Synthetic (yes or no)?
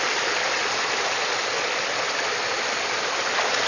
no